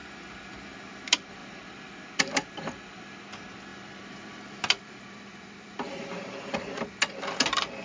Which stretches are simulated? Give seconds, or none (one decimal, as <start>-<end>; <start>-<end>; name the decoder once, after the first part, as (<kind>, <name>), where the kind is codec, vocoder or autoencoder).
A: 1.4-3.1 (vocoder, BigVGAN v2); 3.7-6.3